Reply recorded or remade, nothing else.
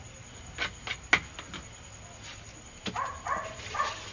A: recorded